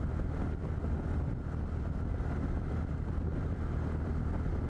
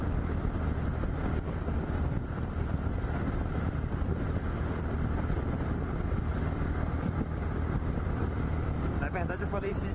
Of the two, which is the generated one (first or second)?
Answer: second